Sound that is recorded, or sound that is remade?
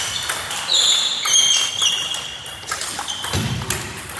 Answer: recorded